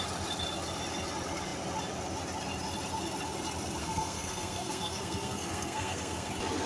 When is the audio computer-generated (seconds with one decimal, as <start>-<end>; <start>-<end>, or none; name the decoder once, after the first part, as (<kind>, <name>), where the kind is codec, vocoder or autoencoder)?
3.8-6.3 (codec, SNAC)